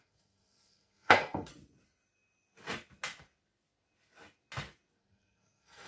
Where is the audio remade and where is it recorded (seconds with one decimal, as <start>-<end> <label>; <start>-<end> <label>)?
0.0-1.5 remade; 1.5-5.0 recorded; 5.0-5.9 remade